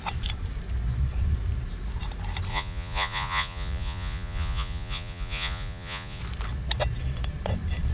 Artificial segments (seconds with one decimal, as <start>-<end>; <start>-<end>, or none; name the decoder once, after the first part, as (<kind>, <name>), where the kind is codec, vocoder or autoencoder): 2.5-6.2 (vocoder, Vocos)